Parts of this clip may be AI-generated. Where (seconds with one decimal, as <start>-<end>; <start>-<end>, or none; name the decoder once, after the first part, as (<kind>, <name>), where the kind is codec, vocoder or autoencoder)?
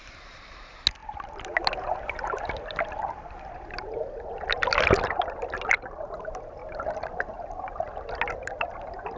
none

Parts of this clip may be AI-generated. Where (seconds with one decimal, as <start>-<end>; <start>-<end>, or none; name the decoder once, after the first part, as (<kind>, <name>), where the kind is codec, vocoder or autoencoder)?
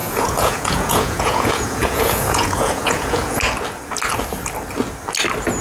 0.0-3.4 (vocoder, Vocos)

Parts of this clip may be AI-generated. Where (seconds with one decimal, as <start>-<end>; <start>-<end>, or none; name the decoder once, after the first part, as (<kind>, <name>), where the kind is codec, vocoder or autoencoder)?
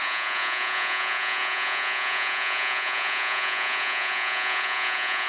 0.0-5.3 (vocoder, Vocos)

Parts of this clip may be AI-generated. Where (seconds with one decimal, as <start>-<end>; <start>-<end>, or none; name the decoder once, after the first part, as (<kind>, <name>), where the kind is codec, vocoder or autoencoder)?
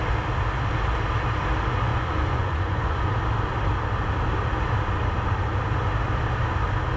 1.9-3.1 (vocoder, Vocos)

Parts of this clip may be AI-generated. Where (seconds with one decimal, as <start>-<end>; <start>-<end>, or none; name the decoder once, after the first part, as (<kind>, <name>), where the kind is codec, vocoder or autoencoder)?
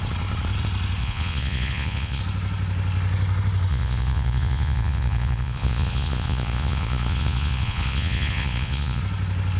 1.0-2.2 (vocoder, Vocos); 3.7-9.0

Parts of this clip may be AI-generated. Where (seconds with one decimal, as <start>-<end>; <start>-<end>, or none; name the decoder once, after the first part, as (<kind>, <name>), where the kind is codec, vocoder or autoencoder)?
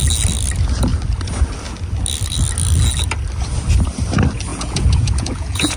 4.5-5.8 (vocoder, Vocos)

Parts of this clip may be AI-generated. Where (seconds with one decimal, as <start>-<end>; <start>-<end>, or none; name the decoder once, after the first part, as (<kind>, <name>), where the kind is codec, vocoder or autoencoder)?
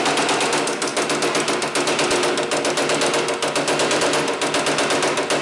none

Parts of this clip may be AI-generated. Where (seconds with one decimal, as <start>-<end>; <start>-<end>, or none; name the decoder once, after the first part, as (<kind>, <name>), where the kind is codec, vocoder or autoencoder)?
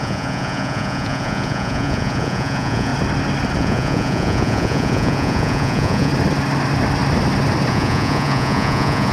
0.0-2.9 (vocoder, Vocos); 3.6-6.1; 7.7-9.1